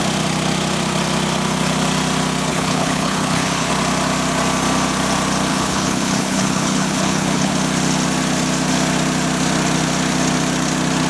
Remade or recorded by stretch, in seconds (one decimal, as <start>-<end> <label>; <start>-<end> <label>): 0.0-2.5 recorded; 2.5-3.7 remade; 3.7-5.5 recorded; 5.5-7.5 remade; 7.5-11.1 recorded